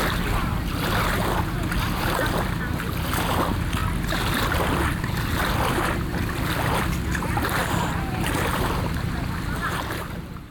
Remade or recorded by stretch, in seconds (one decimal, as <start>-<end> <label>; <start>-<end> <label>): 0.0-10.5 recorded